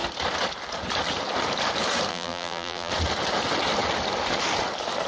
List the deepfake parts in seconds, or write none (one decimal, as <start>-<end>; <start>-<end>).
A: 2.1-2.9